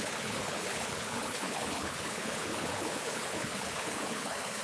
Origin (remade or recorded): remade